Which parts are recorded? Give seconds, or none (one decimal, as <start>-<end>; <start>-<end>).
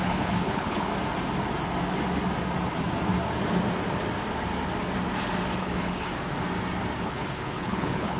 0.9-5.6; 6.1-7.0